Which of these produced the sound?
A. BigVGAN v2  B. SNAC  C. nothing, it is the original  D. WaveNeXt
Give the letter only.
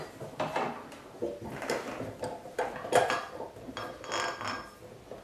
C